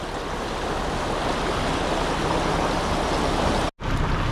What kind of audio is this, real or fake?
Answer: real